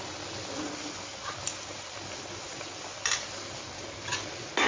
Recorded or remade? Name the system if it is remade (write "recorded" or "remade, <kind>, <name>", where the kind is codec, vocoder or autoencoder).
recorded